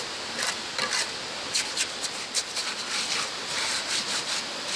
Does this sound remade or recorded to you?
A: recorded